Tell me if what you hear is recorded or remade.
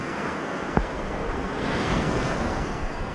remade